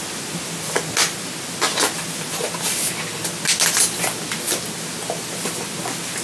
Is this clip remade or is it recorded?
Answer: recorded